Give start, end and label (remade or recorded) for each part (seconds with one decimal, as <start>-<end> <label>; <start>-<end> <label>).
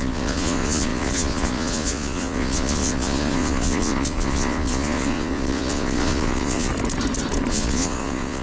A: 0.0-6.7 remade; 6.7-7.5 recorded; 7.5-8.4 remade